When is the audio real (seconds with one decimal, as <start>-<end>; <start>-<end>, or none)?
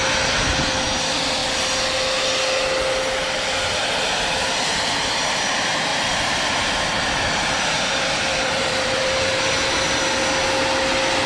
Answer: 0.0-5.9; 9.4-11.3